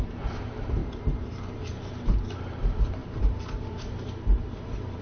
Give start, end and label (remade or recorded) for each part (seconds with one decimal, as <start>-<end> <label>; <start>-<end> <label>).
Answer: 0.0-5.0 remade